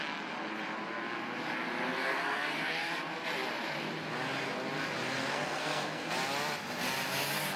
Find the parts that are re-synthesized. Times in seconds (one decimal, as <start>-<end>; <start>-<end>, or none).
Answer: 1.9-2.9; 5.2-6.1